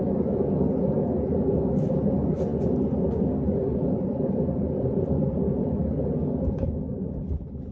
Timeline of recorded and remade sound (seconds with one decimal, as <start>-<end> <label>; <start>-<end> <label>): 0.0-7.7 recorded